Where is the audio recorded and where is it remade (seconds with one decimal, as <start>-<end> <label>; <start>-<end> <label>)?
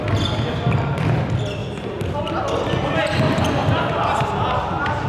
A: 0.0-5.1 recorded